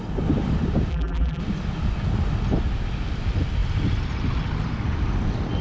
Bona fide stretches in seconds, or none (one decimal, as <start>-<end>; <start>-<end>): 0.0-0.9; 1.4-5.6